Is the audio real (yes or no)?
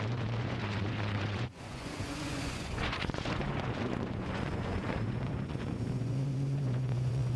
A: no